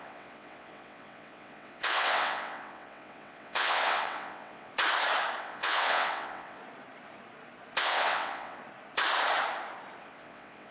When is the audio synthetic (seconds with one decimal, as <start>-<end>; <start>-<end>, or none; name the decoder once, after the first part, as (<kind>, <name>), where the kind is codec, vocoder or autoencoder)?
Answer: 0.0-4.7 (vocoder, WaveNeXt); 5.4-6.6; 7.8-8.6; 10.0-10.7

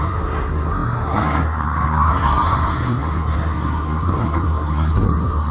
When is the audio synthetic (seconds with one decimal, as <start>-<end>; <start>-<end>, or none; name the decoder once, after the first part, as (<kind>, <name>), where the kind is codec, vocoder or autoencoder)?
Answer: 0.0-5.5 (codec, SNAC)

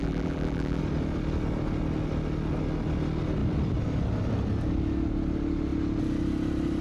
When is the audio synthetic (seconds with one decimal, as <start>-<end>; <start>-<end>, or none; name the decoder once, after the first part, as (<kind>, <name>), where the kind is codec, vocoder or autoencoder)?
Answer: 0.0-0.8 (vocoder, BigVGAN v2)

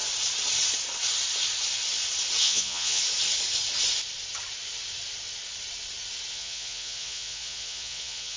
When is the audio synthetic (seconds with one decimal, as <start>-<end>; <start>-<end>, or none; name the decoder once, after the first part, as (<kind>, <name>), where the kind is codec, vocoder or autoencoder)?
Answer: 2.4-3.0 (vocoder, Vocos); 6.3-8.4

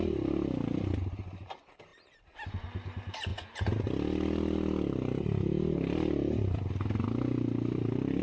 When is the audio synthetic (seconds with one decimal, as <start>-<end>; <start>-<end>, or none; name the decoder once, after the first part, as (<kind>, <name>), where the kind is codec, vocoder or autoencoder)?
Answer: none